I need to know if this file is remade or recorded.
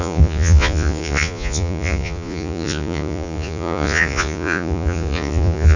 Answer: remade